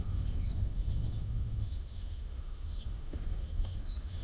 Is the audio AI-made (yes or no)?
yes